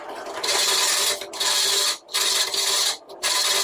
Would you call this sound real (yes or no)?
yes